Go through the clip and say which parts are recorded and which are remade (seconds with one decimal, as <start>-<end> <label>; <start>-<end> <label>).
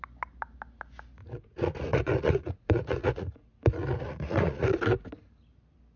0.0-1.2 recorded; 1.2-4.8 remade; 4.8-6.0 recorded